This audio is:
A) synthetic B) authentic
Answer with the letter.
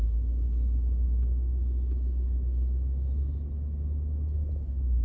B